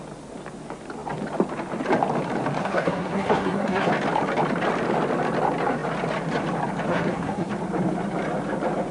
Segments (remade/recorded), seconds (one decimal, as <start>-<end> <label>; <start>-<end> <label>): 0.0-2.6 recorded; 2.6-3.9 remade; 3.9-6.9 recorded; 6.9-7.5 remade; 7.5-8.9 recorded

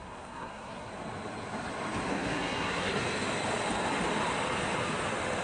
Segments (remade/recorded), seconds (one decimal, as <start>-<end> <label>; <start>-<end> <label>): 0.0-0.9 remade; 0.9-2.1 recorded; 2.1-2.9 remade; 2.9-5.4 recorded

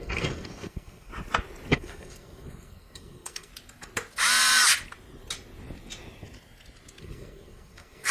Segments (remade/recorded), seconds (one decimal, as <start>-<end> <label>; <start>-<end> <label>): 0.0-1.1 remade; 1.1-1.7 recorded; 1.7-3.5 remade; 3.5-7.0 recorded; 7.0-8.1 remade